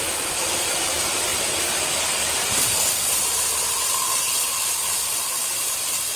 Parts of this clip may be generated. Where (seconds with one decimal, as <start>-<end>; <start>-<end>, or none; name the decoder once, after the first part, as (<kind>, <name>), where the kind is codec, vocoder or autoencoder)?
none